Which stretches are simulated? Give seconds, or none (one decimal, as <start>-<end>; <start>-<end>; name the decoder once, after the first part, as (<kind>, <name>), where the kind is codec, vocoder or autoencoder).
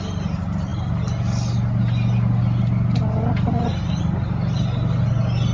none